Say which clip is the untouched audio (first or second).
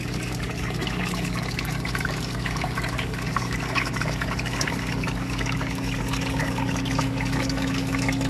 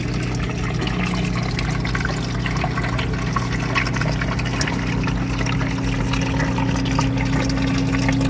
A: second